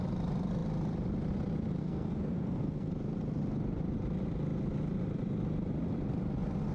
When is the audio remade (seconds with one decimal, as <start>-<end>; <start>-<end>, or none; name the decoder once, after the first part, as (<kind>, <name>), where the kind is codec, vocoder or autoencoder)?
1.8-2.9 (codec, SNAC)